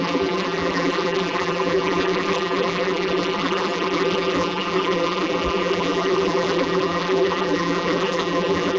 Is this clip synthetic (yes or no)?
yes